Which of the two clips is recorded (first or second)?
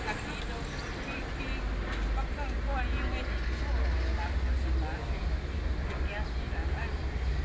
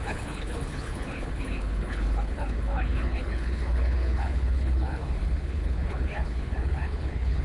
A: first